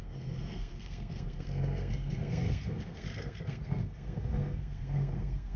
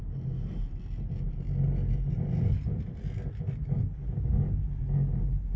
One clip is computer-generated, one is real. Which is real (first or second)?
second